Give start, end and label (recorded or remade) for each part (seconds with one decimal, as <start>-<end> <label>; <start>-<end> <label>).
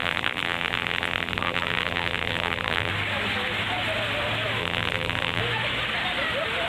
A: 0.0-2.9 remade; 2.9-4.6 recorded; 4.6-5.4 remade; 5.4-6.7 recorded